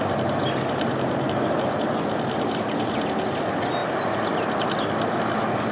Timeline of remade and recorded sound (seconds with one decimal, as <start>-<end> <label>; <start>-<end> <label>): 0.0-5.7 recorded